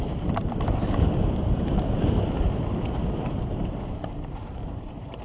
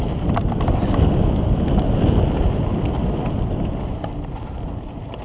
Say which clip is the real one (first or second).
second